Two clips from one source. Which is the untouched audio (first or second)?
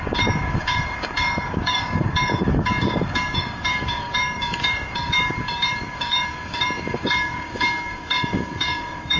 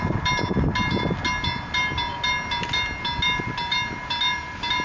second